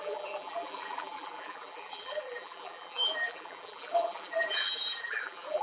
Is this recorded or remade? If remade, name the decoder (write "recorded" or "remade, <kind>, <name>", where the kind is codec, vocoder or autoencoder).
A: remade, vocoder, BigVGAN v2